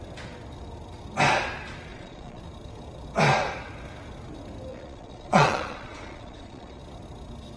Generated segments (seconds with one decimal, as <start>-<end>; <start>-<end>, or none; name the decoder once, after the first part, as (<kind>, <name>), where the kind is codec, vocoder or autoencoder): 1.9-2.4 (vocoder, Vocos); 4.7-6.8